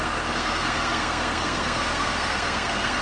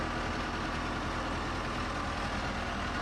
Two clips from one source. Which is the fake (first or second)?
first